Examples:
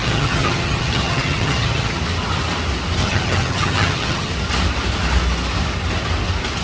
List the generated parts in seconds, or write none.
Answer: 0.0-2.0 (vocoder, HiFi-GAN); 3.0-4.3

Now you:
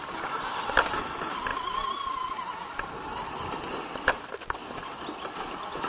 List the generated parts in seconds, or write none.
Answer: none

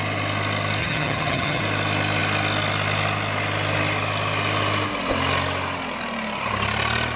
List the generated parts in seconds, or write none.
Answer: 0.8-1.6 (vocoder, HiFi-GAN)